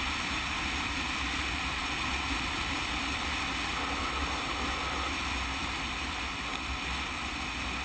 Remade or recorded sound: recorded